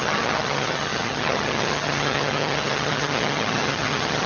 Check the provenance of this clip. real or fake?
fake